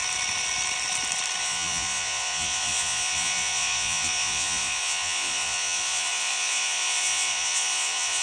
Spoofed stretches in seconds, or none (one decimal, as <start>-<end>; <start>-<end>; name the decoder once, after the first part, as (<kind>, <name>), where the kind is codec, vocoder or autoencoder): 1.4-8.2 (vocoder, Vocos)